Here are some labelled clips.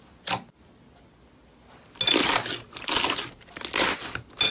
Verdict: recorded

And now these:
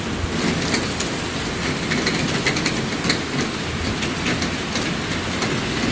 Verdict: recorded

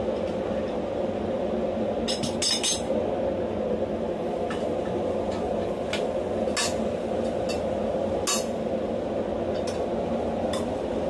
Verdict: recorded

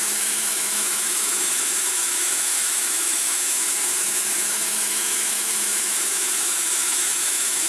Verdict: remade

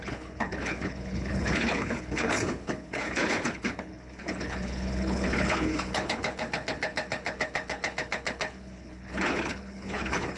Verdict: remade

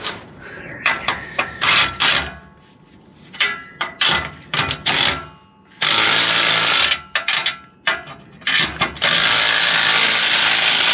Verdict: recorded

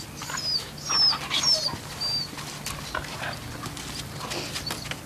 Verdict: recorded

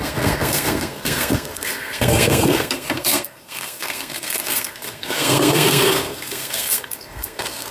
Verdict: remade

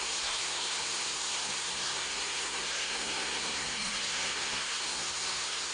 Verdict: remade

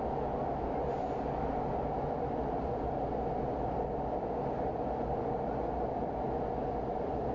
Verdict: recorded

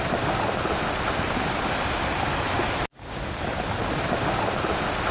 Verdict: recorded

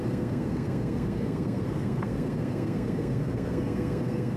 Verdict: remade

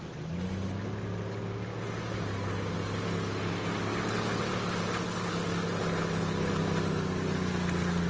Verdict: recorded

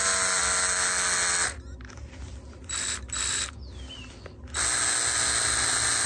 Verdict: recorded